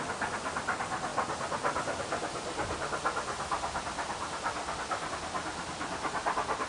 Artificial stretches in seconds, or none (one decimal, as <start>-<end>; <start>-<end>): none